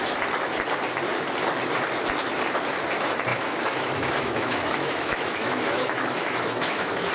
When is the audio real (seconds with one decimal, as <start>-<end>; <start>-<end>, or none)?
0.0-3.3